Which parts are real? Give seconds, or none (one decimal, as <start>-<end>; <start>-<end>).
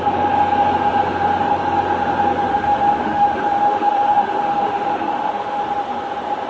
0.0-2.5; 5.6-6.5